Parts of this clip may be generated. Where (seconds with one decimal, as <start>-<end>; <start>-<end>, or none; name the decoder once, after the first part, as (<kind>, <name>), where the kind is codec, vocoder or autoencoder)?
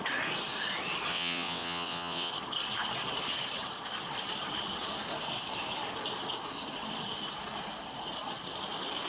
1.1-2.3 (vocoder, WaveNeXt)